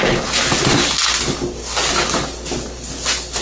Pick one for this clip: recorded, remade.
recorded